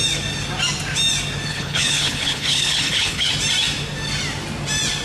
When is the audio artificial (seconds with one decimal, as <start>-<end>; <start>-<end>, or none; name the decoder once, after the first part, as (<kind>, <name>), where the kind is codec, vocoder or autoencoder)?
1.5-3.3 (codec, HILCodec)